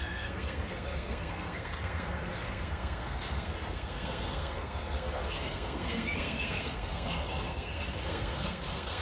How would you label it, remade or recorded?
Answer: remade